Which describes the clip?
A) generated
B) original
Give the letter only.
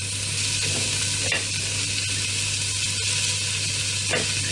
B